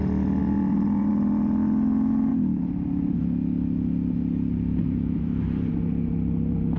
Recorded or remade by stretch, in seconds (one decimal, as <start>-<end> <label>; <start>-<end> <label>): 0.0-0.4 recorded; 0.4-1.1 remade; 1.1-2.3 recorded; 2.3-3.2 remade; 3.2-4.7 recorded; 4.7-6.1 remade; 6.1-6.8 recorded